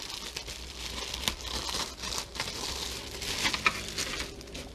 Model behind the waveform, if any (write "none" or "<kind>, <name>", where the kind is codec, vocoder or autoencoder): none